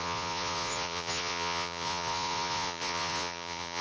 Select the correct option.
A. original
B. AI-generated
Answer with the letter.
B